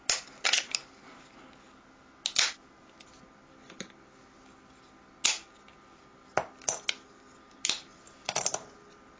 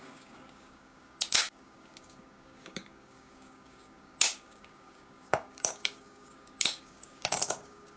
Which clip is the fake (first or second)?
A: second